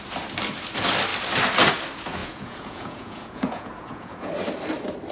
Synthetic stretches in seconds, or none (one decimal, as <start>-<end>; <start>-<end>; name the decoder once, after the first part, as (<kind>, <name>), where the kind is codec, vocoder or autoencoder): 2.2-4.3 (vocoder, Vocos)